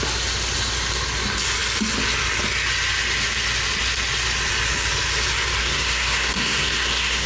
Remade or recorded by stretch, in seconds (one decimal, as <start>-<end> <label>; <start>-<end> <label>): 0.0-5.6 recorded; 5.6-7.3 remade